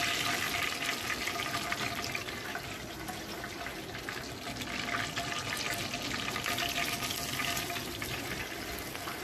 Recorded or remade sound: recorded